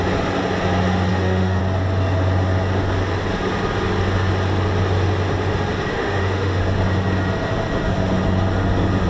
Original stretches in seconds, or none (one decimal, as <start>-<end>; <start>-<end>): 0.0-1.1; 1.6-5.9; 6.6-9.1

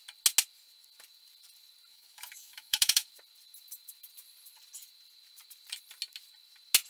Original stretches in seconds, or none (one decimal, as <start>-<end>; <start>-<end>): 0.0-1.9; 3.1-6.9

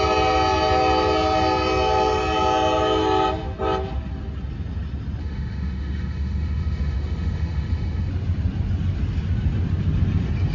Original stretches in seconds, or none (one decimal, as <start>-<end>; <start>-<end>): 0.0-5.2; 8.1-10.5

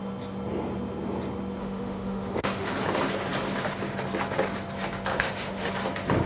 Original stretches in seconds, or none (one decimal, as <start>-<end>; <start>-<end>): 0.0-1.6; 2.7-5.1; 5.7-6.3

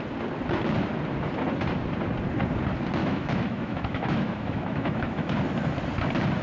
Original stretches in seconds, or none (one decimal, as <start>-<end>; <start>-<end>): 0.0-3.0; 5.3-6.4

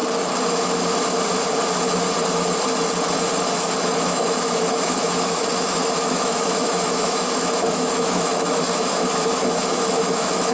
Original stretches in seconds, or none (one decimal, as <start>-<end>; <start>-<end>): 0.0-3.8